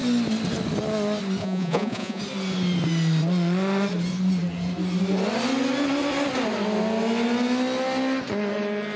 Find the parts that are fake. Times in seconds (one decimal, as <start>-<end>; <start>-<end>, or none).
1.4-2.2